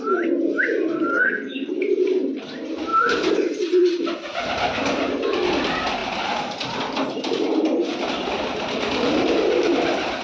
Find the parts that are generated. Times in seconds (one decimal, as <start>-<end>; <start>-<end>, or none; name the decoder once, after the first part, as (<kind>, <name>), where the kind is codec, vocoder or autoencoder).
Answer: 1.1-1.7 (codec, SNAC)